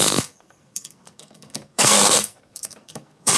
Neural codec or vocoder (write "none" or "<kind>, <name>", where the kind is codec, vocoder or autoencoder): codec, SNAC